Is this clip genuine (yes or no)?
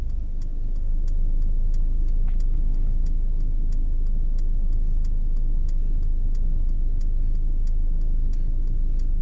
yes